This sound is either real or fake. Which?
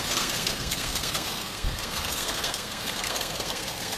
fake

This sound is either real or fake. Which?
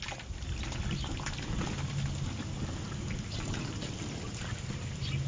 real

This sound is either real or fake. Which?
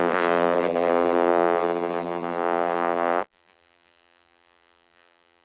fake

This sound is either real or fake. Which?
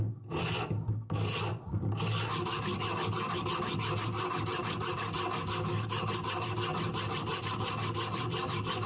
real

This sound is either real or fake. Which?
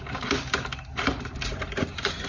real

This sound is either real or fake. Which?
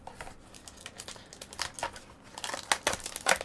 real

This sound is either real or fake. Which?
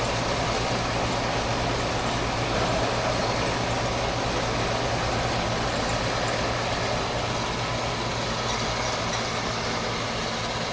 real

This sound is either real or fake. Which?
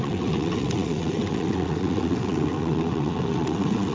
fake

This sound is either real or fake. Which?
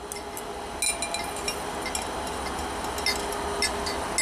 real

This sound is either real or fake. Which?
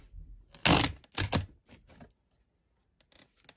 real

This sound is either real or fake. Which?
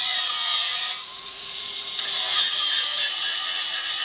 fake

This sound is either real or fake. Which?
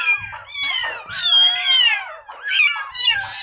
real